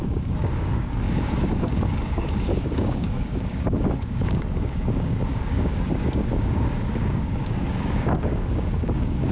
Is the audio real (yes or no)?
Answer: no